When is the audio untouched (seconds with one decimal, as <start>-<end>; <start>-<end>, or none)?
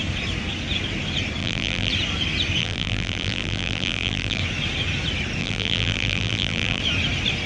0.0-1.4; 1.9-2.6; 4.4-5.4; 6.8-7.5